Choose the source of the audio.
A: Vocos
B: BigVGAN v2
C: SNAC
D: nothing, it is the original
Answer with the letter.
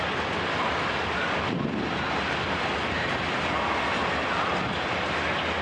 D